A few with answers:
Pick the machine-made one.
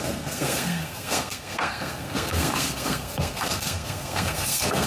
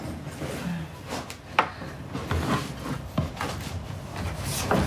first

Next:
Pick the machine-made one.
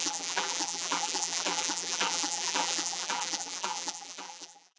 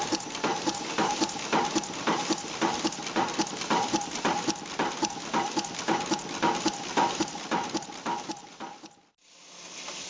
first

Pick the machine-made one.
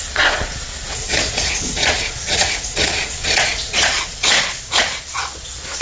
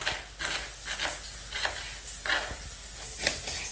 first